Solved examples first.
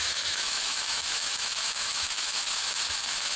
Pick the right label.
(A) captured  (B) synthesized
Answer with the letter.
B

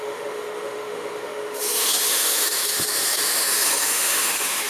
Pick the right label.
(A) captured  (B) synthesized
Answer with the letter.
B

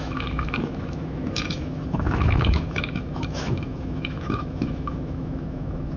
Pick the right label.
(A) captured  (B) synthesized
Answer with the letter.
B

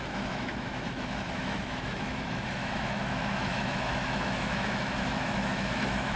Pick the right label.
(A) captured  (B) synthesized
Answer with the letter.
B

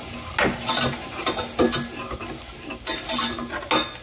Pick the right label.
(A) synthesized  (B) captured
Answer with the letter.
B